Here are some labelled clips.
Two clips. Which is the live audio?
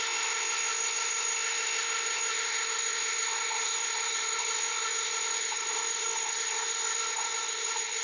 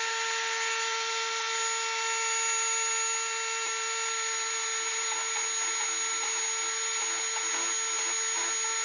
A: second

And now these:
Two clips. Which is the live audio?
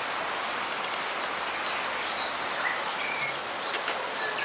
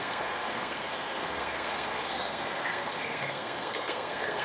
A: first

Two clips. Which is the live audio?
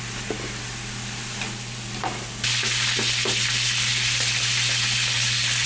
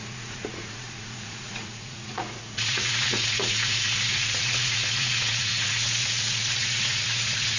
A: first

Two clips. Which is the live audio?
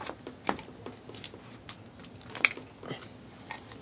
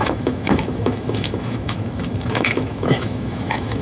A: first